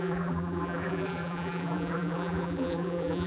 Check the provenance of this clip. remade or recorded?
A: remade